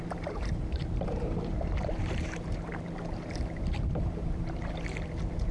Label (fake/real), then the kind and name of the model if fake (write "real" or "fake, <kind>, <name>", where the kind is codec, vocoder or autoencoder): fake, vocoder, BigVGAN v2